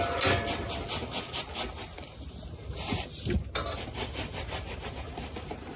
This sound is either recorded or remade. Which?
recorded